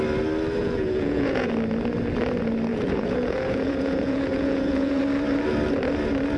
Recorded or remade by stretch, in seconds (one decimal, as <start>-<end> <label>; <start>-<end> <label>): 0.0-0.6 recorded; 0.6-1.5 remade; 1.5-2.7 recorded; 2.7-5.0 remade; 5.0-6.4 recorded